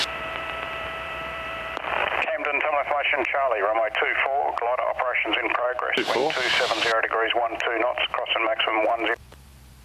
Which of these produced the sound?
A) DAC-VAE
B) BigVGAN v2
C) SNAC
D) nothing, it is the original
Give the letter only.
B